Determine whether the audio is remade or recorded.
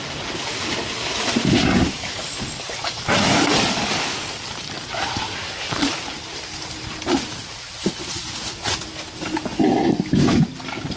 recorded